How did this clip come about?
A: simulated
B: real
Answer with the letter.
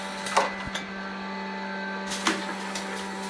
B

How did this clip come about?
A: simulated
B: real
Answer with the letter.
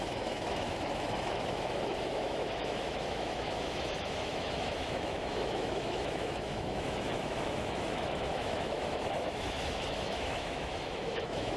A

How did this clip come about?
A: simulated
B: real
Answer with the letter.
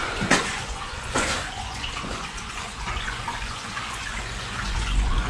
A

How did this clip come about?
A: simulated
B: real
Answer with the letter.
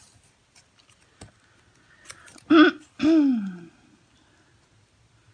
B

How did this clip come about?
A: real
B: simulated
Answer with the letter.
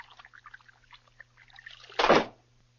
A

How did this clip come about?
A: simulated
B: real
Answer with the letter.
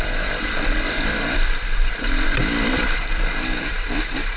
A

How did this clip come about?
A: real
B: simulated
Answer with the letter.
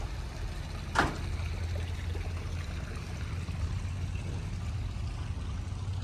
A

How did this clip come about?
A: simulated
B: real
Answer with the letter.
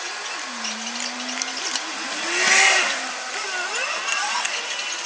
B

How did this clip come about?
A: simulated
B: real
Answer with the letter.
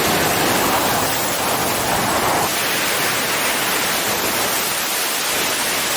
B